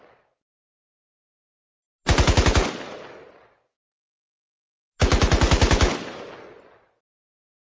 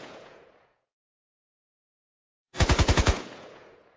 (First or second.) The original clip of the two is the first